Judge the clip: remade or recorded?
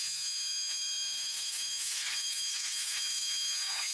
remade